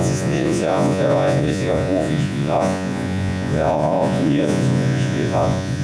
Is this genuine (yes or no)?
no